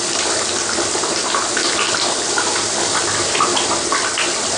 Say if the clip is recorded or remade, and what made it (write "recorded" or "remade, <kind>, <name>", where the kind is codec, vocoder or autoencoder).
recorded